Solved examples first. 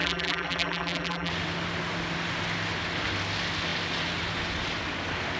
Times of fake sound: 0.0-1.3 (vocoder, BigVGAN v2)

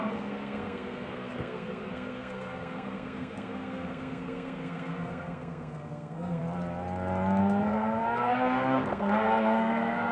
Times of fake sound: 0.0-6.4 (codec, SNAC); 7.4-10.1

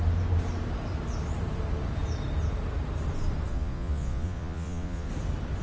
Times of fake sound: 3.5-5.1 (vocoder, Vocos)

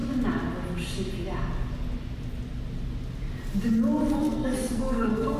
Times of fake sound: 4.2-5.4 (codec, SNAC)

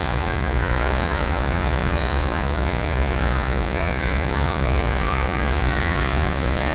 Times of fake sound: 0.0-6.7 (vocoder, Vocos)

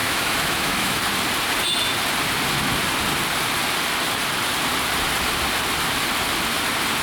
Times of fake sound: 0.0-1.0 (autoencoder, DAC-VAE)

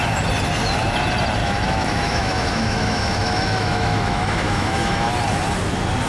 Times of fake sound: 1.4-5.1 (autoencoder, DAC-VAE)

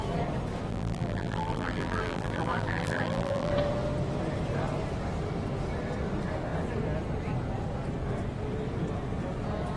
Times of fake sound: 0.7-3.5 (vocoder, BigVGAN v2)